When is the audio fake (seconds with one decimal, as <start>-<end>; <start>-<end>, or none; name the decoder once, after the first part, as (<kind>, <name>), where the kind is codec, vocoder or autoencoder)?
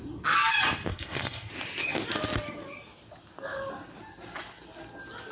0.9-1.5 (codec, SNAC)